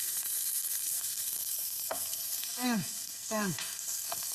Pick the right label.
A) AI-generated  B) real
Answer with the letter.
A